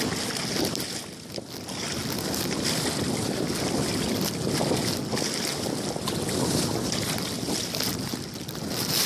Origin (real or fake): real